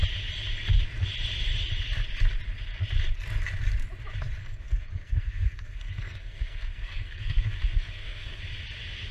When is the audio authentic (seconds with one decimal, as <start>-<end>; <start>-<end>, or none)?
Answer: 0.0-4.4; 8.4-9.1